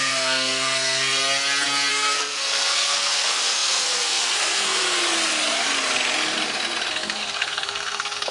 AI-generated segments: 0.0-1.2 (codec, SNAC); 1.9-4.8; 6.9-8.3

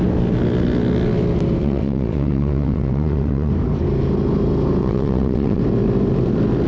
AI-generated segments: 1.6-3.5 (vocoder, WaveNeXt); 4.8-5.6

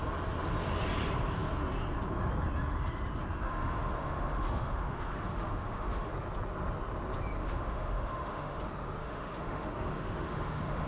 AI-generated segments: 3.4-6.1 (autoencoder, DAC-VAE); 7.4-8.6; 9.0-10.9

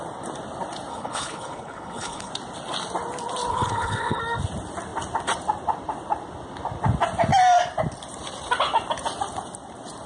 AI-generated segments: 0.9-2.3 (codec, HILCodec); 3.5-4.2

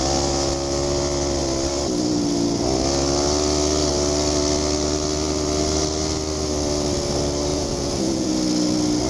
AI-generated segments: 7.5-8.3 (vocoder, Vocos)

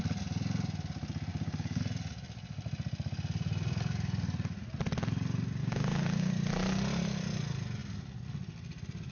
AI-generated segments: 1.3-1.8 (codec, DAC); 5.6-6.3

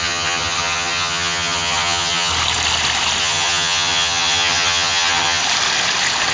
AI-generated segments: 0.0-2.3 (vocoder, HiFi-GAN); 3.2-5.4